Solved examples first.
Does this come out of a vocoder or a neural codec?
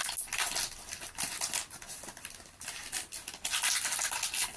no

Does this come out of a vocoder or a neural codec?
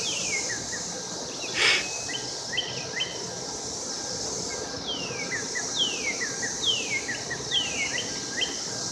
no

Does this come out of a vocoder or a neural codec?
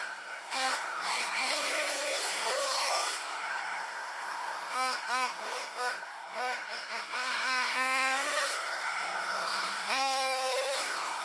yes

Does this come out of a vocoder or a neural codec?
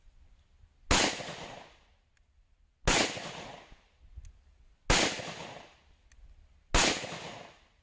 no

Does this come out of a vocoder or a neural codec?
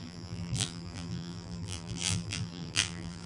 yes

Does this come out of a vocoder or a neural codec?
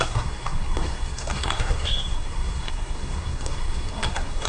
yes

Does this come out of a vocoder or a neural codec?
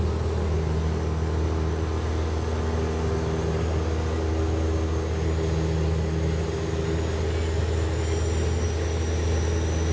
no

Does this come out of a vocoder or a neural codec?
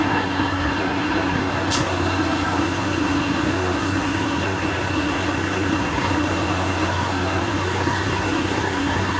yes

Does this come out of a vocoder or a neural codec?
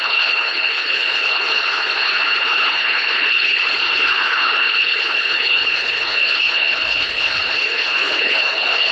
yes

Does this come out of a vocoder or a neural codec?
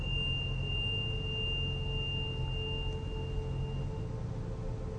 no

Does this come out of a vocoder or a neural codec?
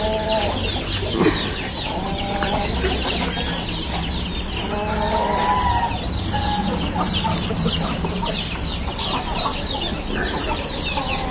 no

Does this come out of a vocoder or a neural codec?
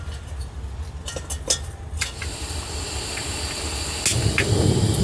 no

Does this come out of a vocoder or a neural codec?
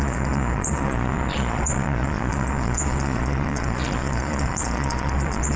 yes